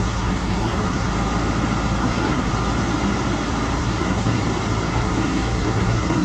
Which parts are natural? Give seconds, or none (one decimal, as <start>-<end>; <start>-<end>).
1.1-2.0; 2.5-3.8; 4.4-4.9